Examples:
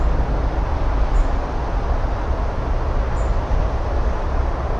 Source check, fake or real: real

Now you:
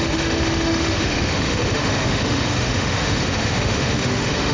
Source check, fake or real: fake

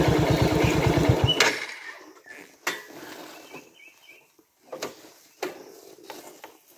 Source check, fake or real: real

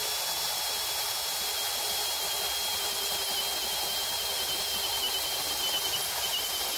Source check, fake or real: real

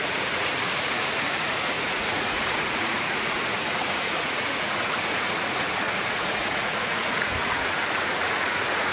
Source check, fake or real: fake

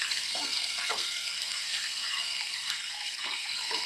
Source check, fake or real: fake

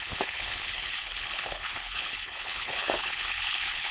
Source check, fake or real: fake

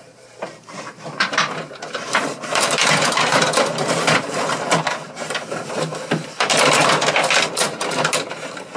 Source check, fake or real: fake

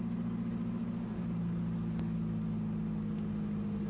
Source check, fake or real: real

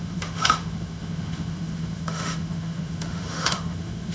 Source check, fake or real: fake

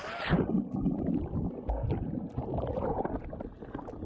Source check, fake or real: real